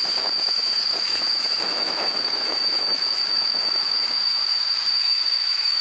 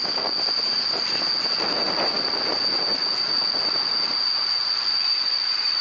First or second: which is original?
second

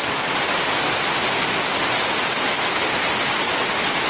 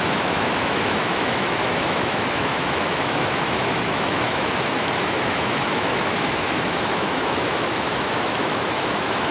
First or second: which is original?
first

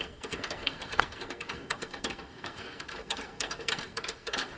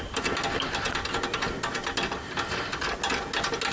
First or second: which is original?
second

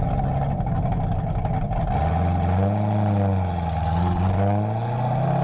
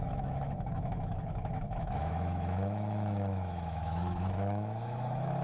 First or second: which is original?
first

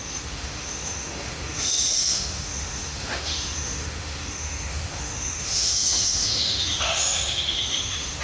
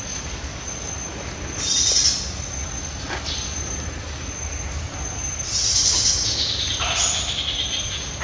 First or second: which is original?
second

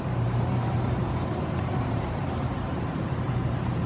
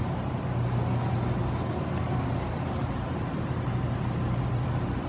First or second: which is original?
second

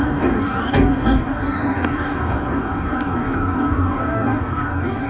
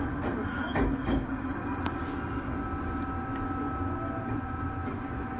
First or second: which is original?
second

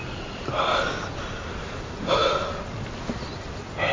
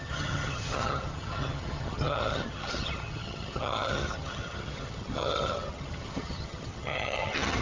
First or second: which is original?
first